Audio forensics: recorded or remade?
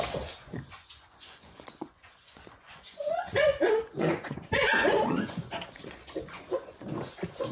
remade